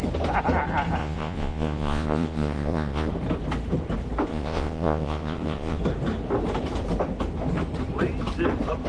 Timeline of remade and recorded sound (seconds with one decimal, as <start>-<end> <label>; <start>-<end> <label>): 0.0-1.0 recorded; 1.0-3.1 remade; 3.1-4.3 recorded; 4.3-5.8 remade; 5.8-8.9 recorded